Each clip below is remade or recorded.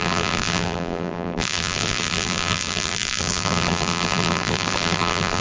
remade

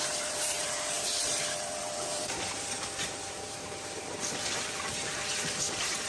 remade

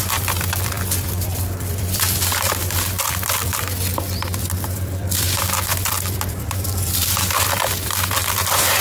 remade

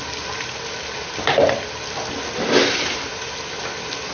recorded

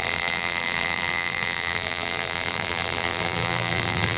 remade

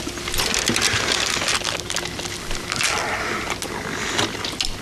recorded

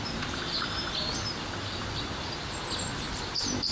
recorded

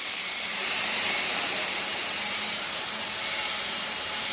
remade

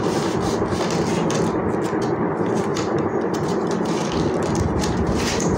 recorded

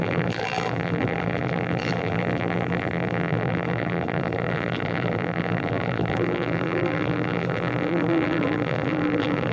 remade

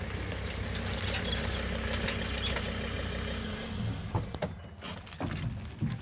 recorded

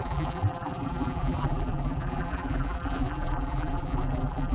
remade